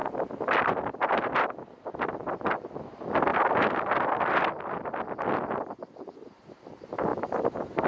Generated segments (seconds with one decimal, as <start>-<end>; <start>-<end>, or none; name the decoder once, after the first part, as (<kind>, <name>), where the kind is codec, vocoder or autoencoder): none